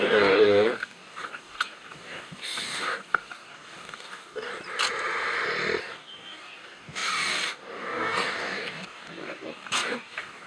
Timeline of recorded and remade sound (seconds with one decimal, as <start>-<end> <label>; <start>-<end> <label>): 0.0-4.5 remade; 4.5-5.8 recorded; 5.8-10.5 remade